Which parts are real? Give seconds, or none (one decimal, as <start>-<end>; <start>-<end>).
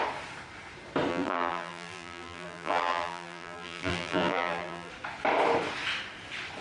0.0-1.1; 4.9-6.6